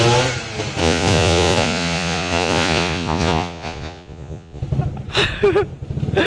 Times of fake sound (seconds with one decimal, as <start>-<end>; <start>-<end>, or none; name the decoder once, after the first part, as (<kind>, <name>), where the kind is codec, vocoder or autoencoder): 0.8-4.6 (vocoder, Vocos)